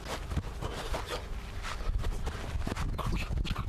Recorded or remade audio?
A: recorded